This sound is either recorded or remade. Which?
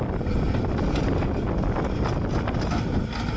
recorded